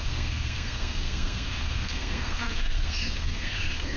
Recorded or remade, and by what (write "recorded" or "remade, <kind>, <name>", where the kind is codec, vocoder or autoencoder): remade, codec, SNAC